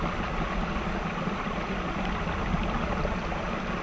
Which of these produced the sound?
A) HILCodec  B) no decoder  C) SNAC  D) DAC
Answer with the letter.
B